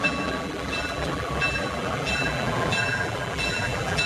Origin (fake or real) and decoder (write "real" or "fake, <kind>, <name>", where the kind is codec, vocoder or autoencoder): fake, vocoder, BigVGAN v2